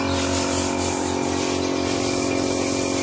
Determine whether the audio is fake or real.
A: real